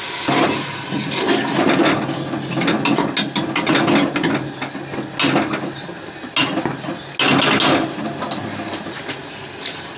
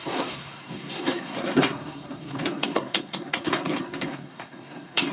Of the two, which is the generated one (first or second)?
second